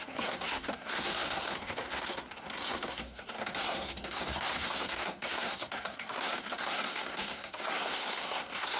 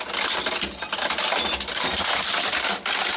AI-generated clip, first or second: first